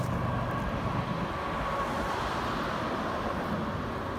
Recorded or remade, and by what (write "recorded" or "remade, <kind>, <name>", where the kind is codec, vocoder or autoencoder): recorded